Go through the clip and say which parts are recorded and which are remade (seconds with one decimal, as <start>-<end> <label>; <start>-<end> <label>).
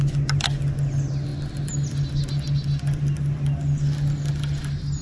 0.0-5.0 recorded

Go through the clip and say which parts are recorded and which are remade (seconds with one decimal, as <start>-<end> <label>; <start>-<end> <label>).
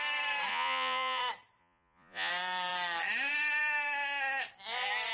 0.0-0.5 recorded; 0.5-1.2 remade; 1.2-1.6 recorded; 1.6-2.3 remade; 2.3-5.1 recorded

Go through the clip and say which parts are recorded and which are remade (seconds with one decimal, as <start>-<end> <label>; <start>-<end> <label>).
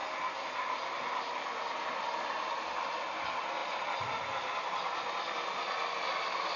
0.0-6.6 recorded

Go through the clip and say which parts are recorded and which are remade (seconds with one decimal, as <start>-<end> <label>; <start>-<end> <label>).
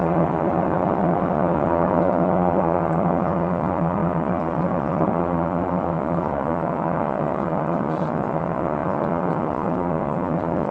0.0-10.7 remade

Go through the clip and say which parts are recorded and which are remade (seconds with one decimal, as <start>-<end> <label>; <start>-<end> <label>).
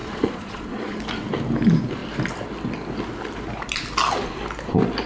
0.0-1.0 remade; 1.0-5.1 recorded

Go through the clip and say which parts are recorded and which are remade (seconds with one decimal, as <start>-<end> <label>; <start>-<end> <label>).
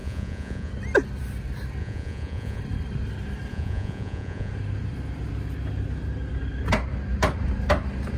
0.0-0.7 remade; 0.7-1.8 recorded; 1.8-2.6 remade; 2.6-3.5 recorded; 3.5-4.5 remade; 4.5-8.2 recorded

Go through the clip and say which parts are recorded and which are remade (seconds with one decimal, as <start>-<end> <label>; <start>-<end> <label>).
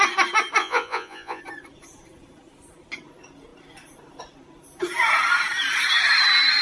0.0-0.6 recorded; 0.6-1.4 remade; 1.4-6.6 recorded